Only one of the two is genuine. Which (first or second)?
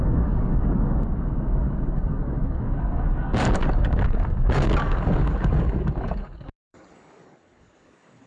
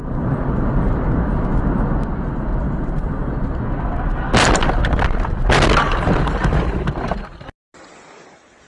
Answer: second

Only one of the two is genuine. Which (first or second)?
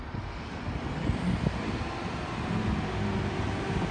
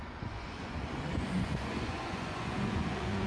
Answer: first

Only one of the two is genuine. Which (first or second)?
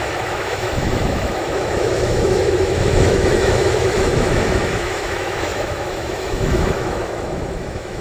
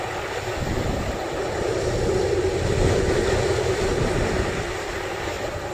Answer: second